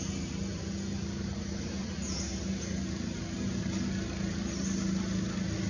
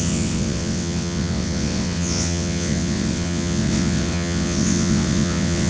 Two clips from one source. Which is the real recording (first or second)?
first